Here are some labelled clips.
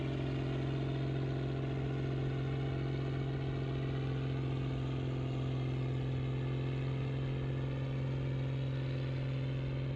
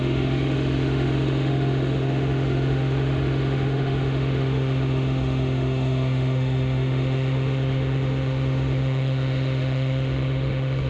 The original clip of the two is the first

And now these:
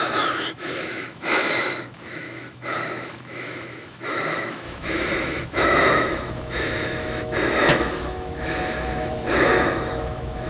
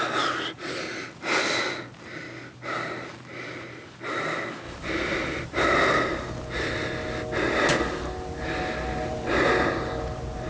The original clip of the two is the second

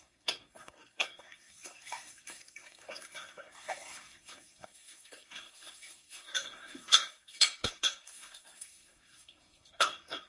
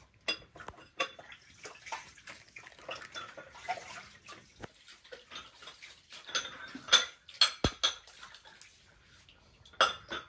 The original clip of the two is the second